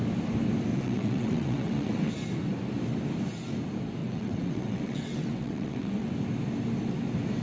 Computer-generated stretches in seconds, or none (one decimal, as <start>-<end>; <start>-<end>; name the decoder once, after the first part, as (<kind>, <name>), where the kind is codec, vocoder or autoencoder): 0.7-2.1 (vocoder, WaveNeXt); 4.0-6.1